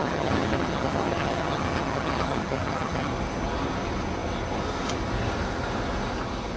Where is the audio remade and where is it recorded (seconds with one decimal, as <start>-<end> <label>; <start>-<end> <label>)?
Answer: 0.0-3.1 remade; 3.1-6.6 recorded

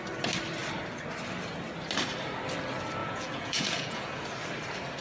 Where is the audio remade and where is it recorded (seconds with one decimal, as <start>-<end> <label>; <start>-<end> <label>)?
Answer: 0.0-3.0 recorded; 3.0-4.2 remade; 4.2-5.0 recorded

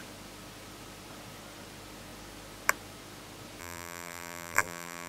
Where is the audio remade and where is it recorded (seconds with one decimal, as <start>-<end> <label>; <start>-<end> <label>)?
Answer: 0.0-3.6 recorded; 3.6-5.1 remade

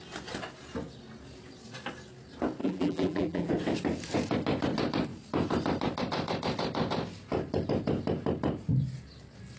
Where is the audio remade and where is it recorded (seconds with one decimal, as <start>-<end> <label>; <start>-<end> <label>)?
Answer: 0.0-2.6 recorded; 2.6-3.5 remade; 3.5-9.6 recorded